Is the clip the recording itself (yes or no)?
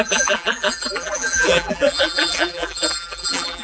no